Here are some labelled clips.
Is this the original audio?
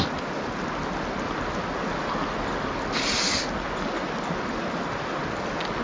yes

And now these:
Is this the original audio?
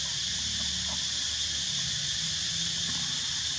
yes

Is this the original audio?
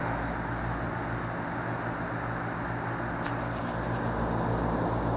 yes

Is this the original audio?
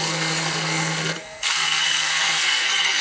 no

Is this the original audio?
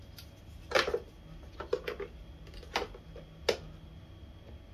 yes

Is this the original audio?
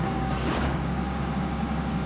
no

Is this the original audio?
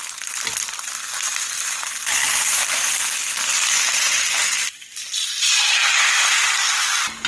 no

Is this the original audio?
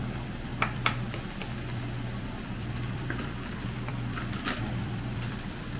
no